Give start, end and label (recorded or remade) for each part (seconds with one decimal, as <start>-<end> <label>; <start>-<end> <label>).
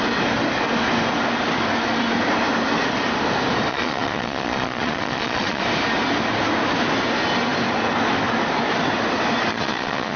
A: 0.0-3.7 recorded; 3.7-5.6 remade; 5.6-9.5 recorded; 9.5-10.2 remade